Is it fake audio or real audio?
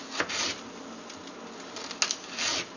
real